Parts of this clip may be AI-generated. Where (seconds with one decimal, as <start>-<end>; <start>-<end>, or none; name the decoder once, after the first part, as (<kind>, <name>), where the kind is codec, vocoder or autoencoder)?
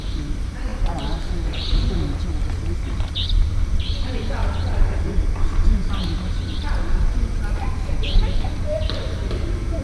0.0-9.8 (vocoder, BigVGAN v2)